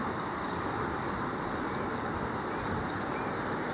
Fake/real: real